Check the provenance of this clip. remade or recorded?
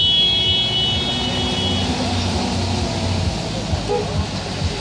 recorded